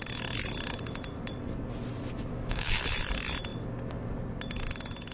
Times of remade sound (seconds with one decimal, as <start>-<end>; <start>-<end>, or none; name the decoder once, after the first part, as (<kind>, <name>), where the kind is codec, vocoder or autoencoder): 2.3-2.8 (codec, DAC)